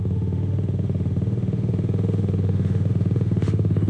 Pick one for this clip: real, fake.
fake